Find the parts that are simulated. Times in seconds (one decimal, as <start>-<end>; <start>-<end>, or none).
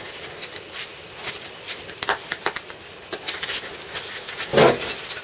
none